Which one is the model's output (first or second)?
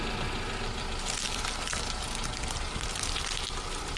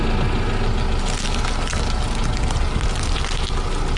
first